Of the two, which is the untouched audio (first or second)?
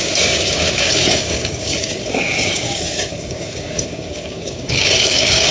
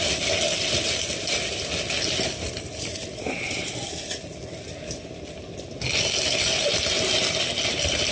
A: second